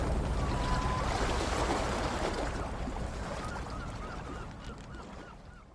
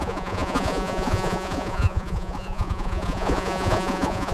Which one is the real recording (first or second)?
first